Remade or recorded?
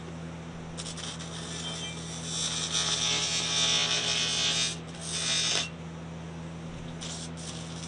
recorded